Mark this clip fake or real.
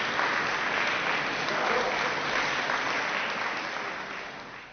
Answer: real